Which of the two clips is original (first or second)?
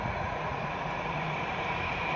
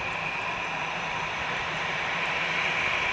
second